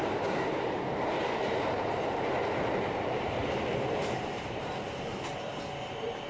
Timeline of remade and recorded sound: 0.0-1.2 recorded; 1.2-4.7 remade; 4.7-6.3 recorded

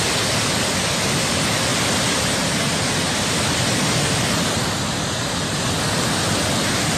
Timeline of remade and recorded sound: 0.0-7.0 recorded